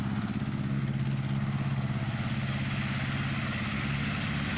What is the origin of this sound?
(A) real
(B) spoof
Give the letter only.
A